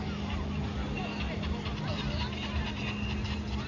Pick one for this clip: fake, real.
real